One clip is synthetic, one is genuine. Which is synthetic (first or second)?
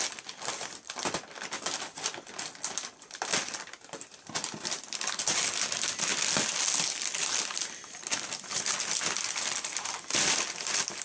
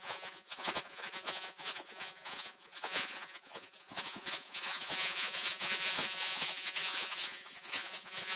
second